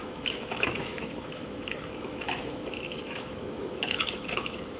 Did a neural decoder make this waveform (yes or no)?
yes